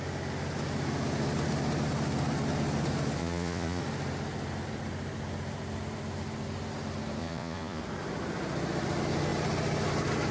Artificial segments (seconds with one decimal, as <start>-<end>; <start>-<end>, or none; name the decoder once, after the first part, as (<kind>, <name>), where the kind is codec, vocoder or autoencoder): 3.2-3.8 (vocoder, Vocos); 7.2-7.8